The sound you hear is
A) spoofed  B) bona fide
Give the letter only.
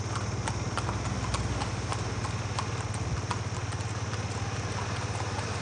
B